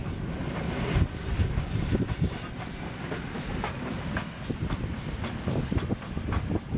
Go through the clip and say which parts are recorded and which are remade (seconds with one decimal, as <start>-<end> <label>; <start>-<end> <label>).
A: 0.0-6.8 recorded